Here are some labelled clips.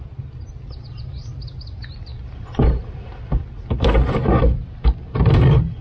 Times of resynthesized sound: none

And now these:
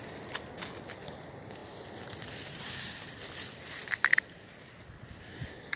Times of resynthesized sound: none

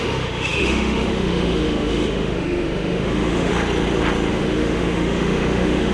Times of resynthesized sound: 0.0-3.5 (autoencoder, DAC-VAE); 4.3-5.9

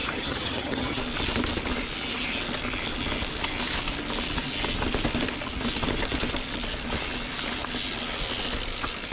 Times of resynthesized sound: 0.0-1.0 (vocoder, HiFi-GAN)

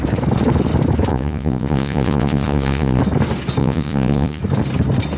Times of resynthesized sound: 1.1-3.0 (vocoder, Vocos); 3.6-4.4

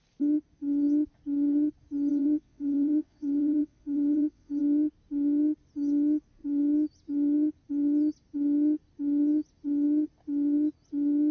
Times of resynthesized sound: 2.1-4.6 (vocoder, WaveNeXt)